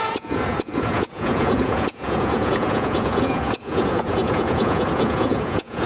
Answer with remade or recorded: remade